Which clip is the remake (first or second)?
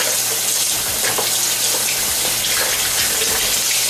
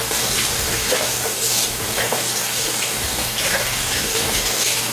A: second